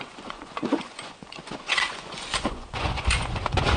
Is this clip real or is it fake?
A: fake